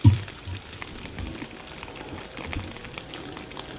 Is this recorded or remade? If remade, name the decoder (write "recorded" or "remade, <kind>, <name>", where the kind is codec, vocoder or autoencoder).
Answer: remade, vocoder, BigVGAN v2